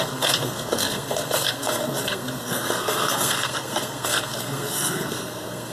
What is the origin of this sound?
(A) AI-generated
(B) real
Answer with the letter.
A